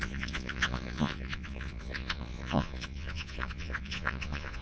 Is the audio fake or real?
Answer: fake